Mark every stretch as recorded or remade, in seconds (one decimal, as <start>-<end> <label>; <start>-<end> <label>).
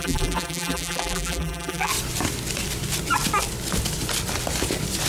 0.0-1.9 remade; 1.9-5.1 recorded